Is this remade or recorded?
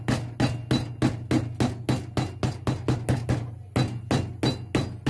recorded